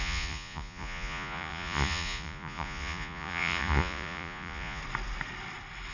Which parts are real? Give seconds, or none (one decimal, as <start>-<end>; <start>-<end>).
4.8-5.9